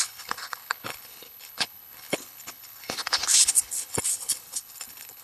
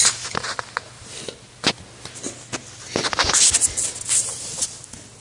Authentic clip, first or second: second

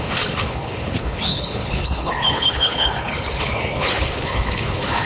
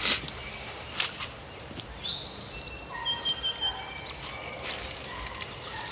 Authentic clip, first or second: second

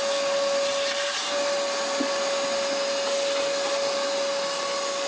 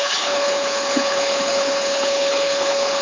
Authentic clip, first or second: first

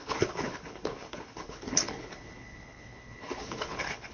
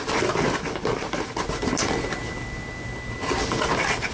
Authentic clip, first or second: second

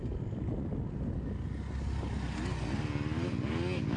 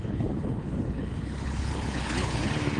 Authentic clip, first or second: first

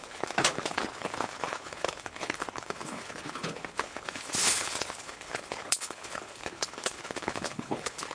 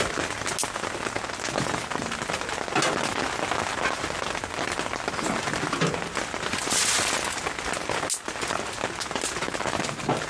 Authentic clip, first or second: second